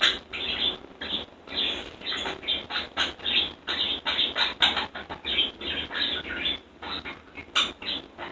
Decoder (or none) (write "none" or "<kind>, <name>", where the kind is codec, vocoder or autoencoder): none